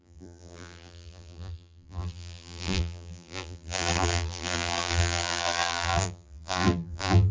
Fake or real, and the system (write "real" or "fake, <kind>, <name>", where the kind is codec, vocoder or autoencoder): fake, vocoder, BigVGAN v2